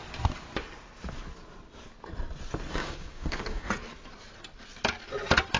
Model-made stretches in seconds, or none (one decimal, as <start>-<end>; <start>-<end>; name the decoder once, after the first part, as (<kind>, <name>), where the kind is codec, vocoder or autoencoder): 2.8-3.7 (codec, DAC)